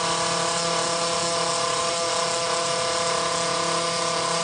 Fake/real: real